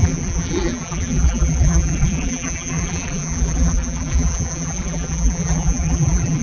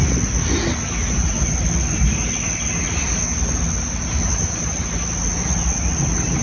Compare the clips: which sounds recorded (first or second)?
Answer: second